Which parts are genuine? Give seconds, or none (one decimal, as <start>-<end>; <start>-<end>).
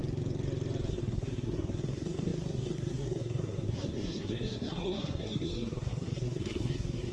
0.0-0.9